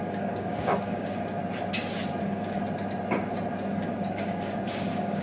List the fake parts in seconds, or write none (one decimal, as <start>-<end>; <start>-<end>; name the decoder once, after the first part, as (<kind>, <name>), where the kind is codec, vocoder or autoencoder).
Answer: 0.0-1.4 (codec, DAC); 2.2-2.6; 3.7-5.2